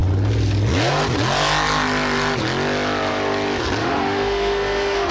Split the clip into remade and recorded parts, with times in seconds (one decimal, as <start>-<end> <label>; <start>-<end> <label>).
0.0-3.8 recorded; 3.8-5.1 remade